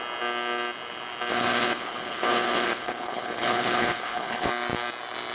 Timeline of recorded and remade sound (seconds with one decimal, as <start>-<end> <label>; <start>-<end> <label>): 0.0-1.3 recorded; 1.3-4.5 remade; 4.5-5.3 recorded